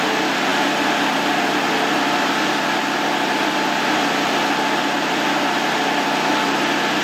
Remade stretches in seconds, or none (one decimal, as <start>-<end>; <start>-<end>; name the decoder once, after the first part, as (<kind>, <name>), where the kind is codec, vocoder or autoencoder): none